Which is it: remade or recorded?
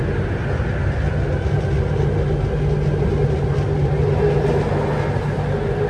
recorded